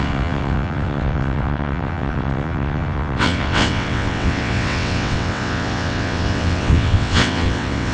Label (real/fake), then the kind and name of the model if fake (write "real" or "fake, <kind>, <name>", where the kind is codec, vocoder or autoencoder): fake, vocoder, WaveNeXt